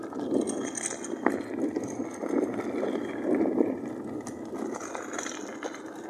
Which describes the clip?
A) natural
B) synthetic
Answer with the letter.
A